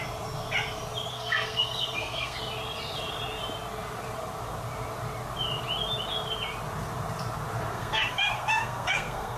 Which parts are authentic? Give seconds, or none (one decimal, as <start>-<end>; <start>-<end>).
0.0-1.1; 2.4-7.7